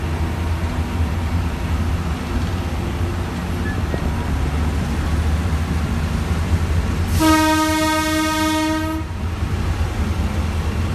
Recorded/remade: recorded